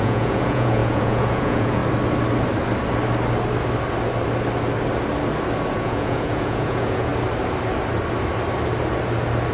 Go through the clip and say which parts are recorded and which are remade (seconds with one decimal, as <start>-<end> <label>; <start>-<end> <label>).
0.0-1.8 remade; 1.8-5.7 recorded; 5.7-7.1 remade; 7.1-9.5 recorded